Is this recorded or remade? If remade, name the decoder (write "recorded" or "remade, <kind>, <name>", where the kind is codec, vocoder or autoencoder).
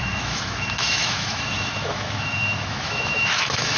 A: remade, autoencoder, DAC-VAE